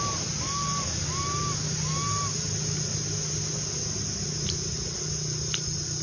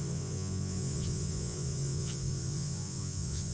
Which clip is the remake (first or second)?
second